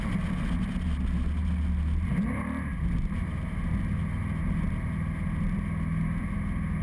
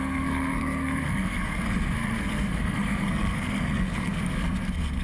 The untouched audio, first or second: first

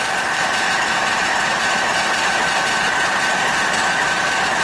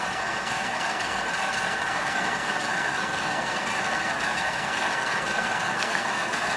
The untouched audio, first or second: first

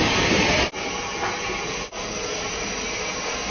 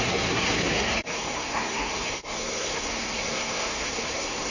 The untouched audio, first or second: first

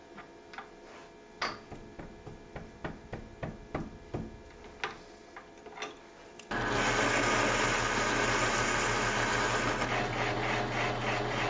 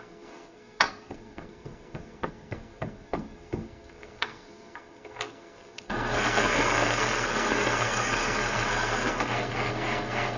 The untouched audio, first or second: first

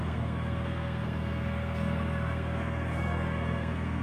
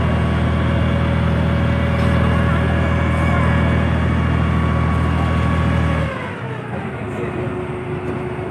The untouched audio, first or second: second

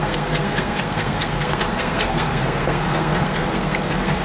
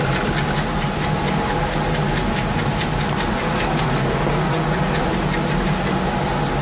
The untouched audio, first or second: second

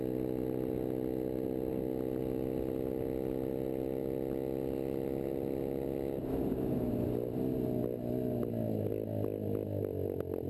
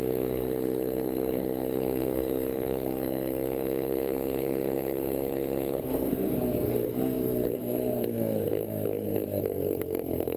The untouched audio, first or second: first